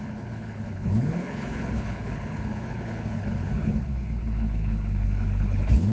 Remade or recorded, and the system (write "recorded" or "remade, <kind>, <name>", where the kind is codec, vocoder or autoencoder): remade, codec, HILCodec